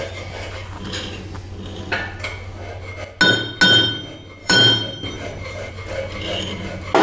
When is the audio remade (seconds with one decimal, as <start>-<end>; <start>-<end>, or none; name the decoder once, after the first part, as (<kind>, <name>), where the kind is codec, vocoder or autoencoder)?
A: 4.4-5.7 (vocoder, BigVGAN v2)